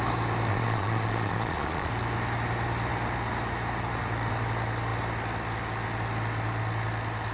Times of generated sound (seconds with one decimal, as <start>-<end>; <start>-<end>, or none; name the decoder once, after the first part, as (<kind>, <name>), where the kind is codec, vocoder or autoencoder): 0.5-1.9 (vocoder, Vocos)